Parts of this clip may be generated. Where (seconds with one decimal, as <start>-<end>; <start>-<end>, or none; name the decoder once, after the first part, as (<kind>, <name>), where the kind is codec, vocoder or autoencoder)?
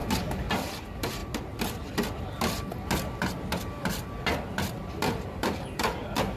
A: 0.5-1.2 (vocoder, BigVGAN v2); 4.2-6.4